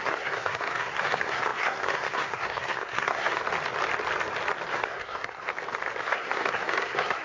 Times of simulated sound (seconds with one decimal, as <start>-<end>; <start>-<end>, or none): 0.0-3.4; 4.7-5.5; 6.0-7.2